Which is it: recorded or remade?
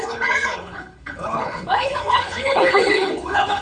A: remade